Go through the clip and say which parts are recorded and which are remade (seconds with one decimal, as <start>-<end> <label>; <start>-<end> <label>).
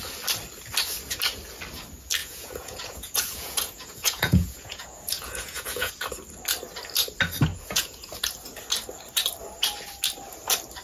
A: 0.0-2.2 recorded; 2.2-5.9 remade; 5.9-7.5 recorded; 7.5-8.1 remade; 8.1-10.8 recorded